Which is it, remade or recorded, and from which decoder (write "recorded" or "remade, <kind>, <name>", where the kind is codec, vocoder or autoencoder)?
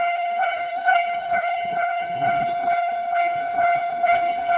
remade, codec, HILCodec